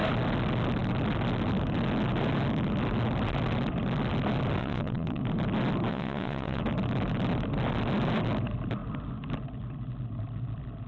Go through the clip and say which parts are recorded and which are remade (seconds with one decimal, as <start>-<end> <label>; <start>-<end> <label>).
0.0-4.6 recorded; 4.6-5.2 remade; 5.2-5.9 recorded; 5.9-6.6 remade; 6.6-10.9 recorded